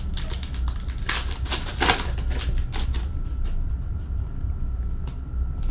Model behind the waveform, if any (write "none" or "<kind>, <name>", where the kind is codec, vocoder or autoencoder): none